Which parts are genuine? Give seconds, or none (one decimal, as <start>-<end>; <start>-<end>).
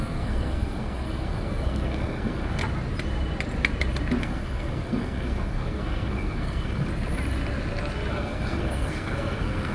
2.6-4.2; 6.9-8.1